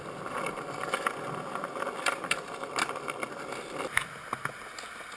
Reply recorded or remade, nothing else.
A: recorded